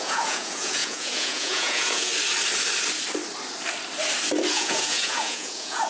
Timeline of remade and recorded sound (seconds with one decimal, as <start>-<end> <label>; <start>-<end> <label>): 0.0-2.1 remade; 2.1-4.5 recorded; 4.5-5.9 remade